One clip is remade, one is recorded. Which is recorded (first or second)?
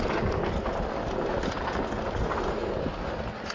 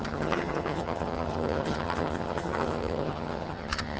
first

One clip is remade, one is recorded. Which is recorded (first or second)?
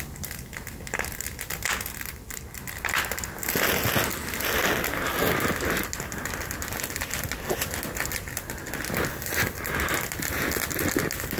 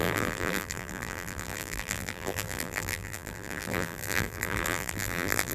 first